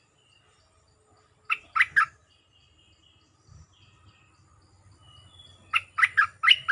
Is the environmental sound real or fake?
real